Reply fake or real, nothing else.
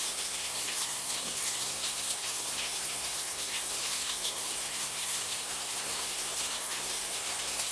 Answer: fake